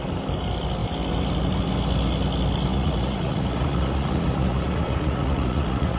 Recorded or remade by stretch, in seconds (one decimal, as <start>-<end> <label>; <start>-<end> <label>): 0.0-2.7 recorded; 2.7-6.0 remade